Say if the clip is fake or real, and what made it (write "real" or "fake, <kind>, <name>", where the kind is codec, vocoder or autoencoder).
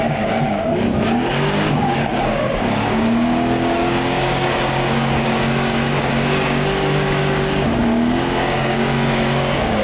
fake, codec, DAC